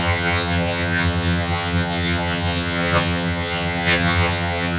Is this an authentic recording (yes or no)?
no